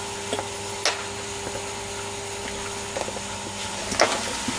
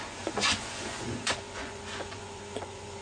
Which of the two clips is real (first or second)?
first